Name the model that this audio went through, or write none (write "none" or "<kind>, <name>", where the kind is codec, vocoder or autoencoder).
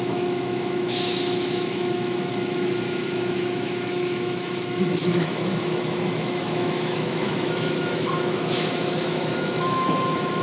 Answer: autoencoder, DAC-VAE